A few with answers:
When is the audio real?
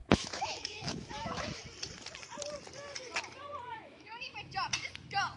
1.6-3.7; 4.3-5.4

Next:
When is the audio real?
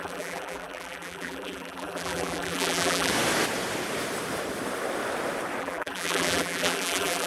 3.1-5.6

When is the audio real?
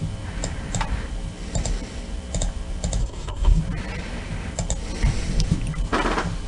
0.0-3.0; 3.6-6.5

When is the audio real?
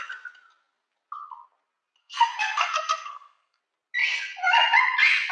0.0-2.0; 3.6-5.3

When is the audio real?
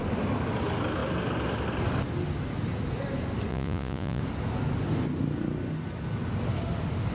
0.0-3.5; 4.2-7.1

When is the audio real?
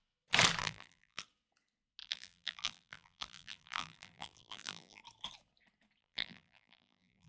0.0-0.6; 1.2-2.0; 5.0-6.0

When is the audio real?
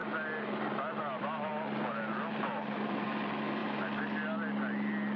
0.0-1.0; 1.5-2.8; 3.6-5.2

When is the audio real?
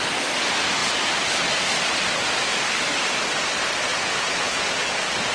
0.0-3.9; 4.8-5.3